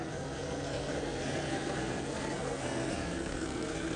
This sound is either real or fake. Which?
fake